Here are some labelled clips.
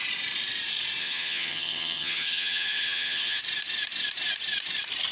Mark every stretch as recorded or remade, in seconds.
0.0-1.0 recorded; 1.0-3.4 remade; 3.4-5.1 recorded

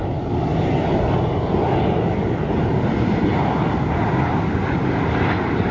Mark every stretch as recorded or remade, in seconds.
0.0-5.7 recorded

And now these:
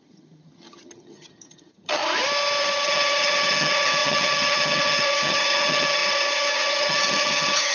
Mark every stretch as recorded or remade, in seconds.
0.0-2.0 remade; 2.0-2.6 recorded; 2.6-7.7 remade

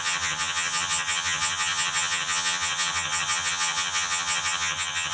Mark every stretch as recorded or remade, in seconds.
0.0-5.1 remade

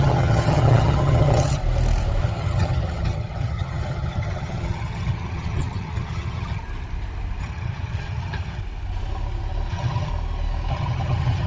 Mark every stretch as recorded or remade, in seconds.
0.0-1.6 remade; 1.6-2.2 recorded; 2.2-6.6 remade; 6.6-7.4 recorded; 7.4-8.6 remade; 8.6-9.7 recorded; 9.7-10.1 remade; 10.1-10.7 recorded; 10.7-11.5 remade

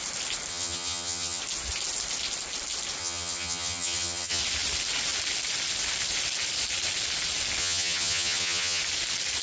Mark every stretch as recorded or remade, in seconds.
0.0-0.5 recorded; 0.5-1.4 remade; 1.4-3.0 recorded; 3.0-4.4 remade; 4.4-7.6 recorded; 7.6-8.8 remade; 8.8-9.4 recorded